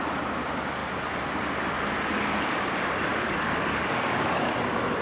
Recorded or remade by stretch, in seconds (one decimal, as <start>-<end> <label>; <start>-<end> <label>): 0.0-3.1 recorded; 3.1-4.5 remade; 4.5-5.0 recorded